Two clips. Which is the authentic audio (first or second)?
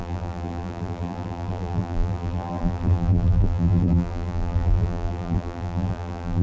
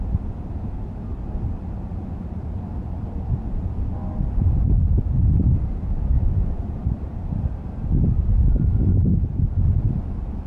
second